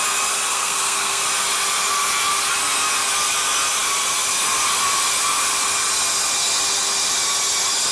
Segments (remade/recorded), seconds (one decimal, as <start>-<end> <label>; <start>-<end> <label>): 0.0-0.5 recorded; 0.5-1.2 remade; 1.2-7.9 recorded